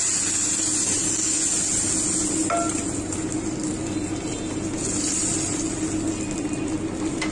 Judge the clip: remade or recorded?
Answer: recorded